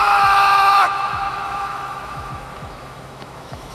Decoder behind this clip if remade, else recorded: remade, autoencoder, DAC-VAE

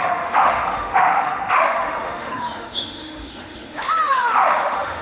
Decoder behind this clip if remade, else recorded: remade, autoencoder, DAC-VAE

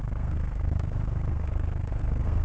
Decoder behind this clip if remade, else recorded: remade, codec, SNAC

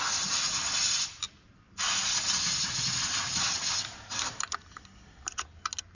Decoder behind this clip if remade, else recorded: recorded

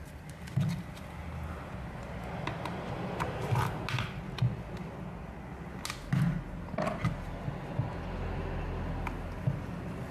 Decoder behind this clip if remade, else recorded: recorded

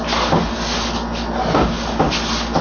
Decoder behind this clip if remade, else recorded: recorded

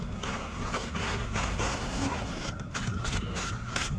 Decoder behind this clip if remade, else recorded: remade, codec, SNAC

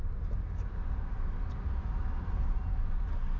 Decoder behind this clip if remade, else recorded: recorded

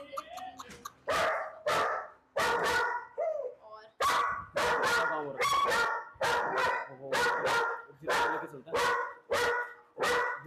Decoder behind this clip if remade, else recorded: recorded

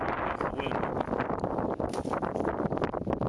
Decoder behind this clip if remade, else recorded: recorded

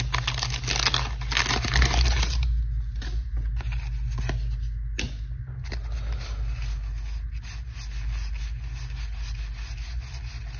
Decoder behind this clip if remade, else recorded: recorded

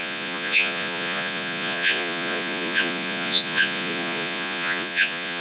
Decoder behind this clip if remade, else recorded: remade, vocoder, Vocos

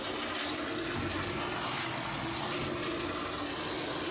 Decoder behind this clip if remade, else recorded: recorded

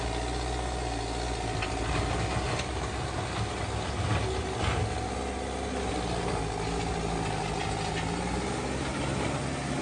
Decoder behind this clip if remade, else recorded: recorded